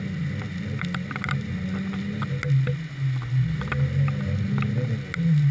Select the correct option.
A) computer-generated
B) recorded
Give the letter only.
B